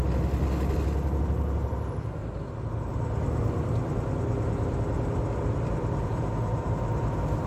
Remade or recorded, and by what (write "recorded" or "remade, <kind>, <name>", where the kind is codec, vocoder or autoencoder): recorded